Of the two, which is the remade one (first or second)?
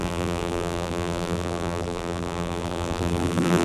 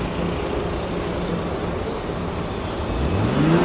first